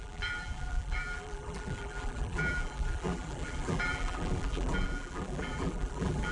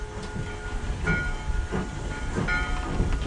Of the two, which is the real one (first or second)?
second